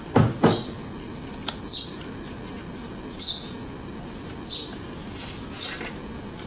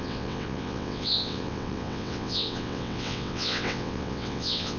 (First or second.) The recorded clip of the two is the first